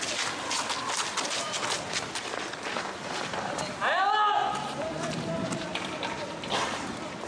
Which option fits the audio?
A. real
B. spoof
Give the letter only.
A